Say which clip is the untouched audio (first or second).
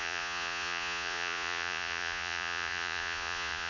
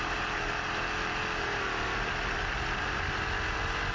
second